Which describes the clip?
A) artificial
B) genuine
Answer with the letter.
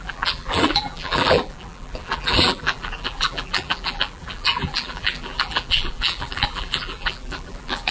A